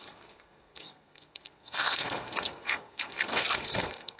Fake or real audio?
fake